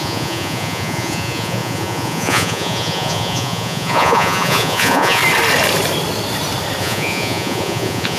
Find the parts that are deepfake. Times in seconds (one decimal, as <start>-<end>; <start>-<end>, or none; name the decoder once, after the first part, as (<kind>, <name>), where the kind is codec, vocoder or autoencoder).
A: 0.0-5.2 (vocoder, Vocos); 6.8-8.2